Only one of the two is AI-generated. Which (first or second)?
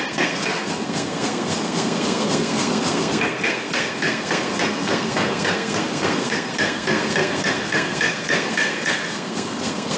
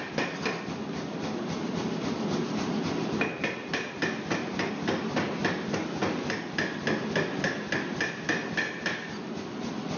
first